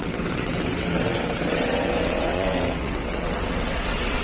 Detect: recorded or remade remade